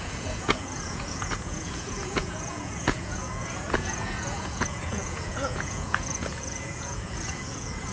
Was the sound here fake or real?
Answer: fake